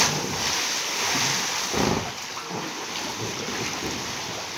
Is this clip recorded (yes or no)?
yes